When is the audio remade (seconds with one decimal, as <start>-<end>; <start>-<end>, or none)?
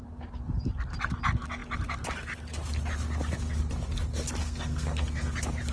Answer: 4.4-5.3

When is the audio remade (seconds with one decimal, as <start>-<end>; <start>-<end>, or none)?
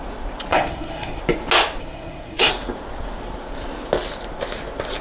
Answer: 0.5-1.2; 1.8-2.5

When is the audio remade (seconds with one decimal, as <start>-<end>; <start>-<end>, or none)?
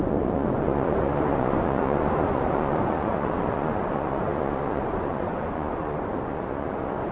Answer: 0.0-7.1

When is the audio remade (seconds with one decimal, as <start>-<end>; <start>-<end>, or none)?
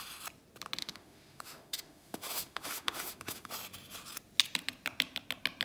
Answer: 0.8-3.5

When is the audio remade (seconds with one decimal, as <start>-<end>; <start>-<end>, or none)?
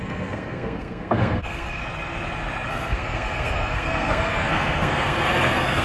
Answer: 0.0-1.8; 2.7-5.8